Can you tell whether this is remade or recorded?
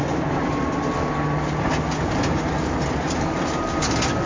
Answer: recorded